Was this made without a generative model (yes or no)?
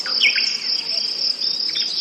yes